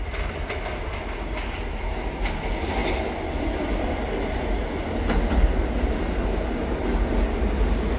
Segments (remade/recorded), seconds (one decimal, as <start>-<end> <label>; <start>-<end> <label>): 0.0-8.0 recorded